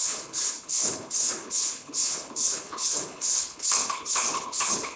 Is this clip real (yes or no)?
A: no